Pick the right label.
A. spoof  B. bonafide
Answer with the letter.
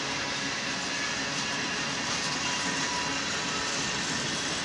B